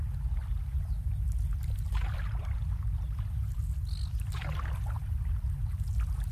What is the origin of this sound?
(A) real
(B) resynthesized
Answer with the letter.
A